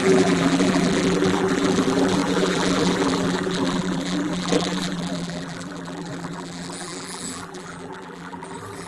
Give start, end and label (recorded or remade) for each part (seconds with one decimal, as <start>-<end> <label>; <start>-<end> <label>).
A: 0.0-8.9 remade